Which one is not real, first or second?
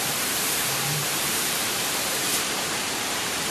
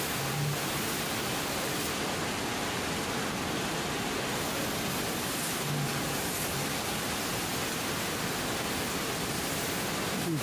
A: first